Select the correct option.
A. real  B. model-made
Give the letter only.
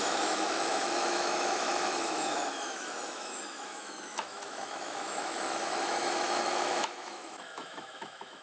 B